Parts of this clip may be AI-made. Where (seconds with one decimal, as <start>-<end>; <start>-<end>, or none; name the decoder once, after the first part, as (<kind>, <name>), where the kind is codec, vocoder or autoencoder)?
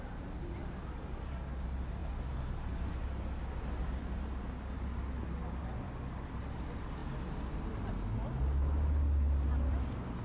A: none